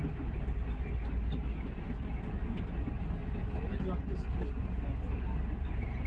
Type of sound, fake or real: real